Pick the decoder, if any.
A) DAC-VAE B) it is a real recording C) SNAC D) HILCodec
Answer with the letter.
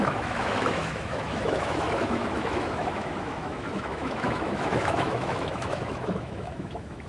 A